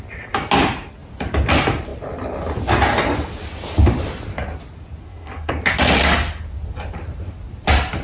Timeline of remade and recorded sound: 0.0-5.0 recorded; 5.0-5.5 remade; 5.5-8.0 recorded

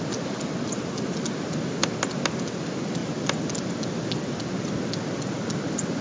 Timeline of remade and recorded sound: 0.0-1.8 remade; 1.8-2.5 recorded; 2.5-3.0 remade; 3.0-4.7 recorded; 4.7-6.0 remade

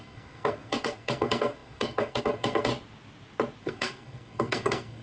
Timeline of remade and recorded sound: 0.0-2.7 remade; 2.7-3.6 recorded; 3.6-5.0 remade